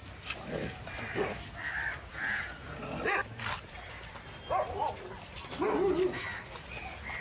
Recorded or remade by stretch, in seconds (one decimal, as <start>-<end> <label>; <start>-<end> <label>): 0.0-2.1 recorded; 2.1-2.8 remade; 2.8-7.2 recorded